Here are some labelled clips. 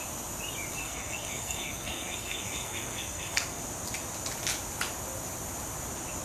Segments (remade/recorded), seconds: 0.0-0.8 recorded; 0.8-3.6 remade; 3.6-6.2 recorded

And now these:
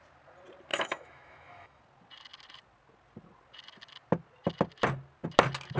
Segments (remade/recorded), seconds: 0.0-0.7 recorded; 0.7-1.8 remade; 1.8-5.8 recorded

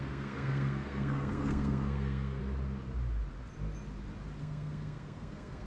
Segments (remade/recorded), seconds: 0.0-2.4 remade; 2.4-4.4 recorded; 4.4-5.7 remade

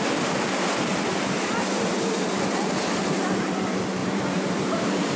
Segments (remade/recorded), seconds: 0.0-4.0 recorded; 4.0-5.2 remade